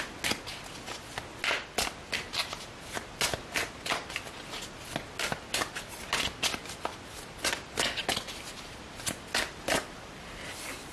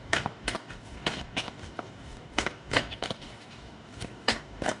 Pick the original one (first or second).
first